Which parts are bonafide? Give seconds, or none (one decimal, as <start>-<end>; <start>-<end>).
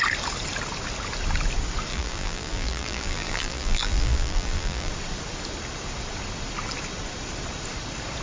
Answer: 0.0-1.9; 4.9-8.2